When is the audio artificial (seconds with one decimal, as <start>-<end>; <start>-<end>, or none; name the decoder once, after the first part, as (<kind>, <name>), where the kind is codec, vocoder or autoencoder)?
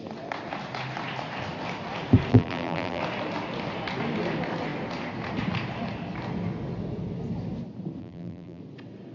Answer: 2.3-3.0 (vocoder, BigVGAN v2); 8.0-8.6